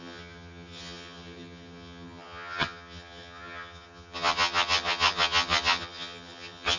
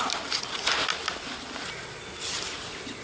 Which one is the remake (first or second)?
first